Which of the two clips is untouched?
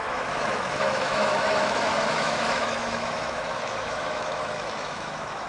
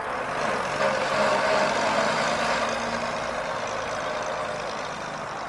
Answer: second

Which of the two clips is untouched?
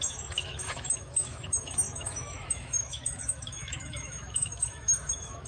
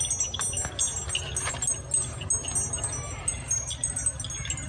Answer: second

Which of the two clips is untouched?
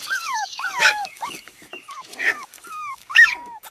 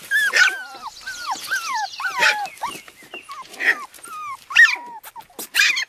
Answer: second